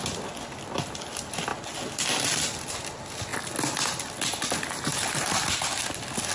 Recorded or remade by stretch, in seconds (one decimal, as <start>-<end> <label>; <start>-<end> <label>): 0.0-4.9 recorded; 4.9-5.7 remade; 5.7-6.3 recorded